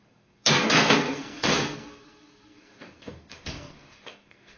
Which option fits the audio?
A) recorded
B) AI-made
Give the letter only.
B